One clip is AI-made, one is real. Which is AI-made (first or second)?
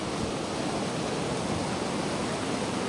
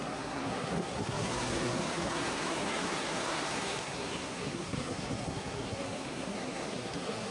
second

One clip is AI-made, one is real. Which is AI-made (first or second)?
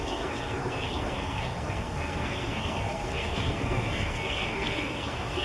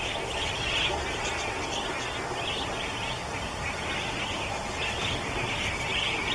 first